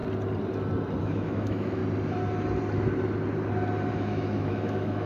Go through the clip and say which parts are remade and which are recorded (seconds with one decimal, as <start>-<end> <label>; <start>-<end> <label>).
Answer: 0.0-1.0 recorded; 1.0-1.8 remade; 1.8-3.9 recorded; 3.9-5.1 remade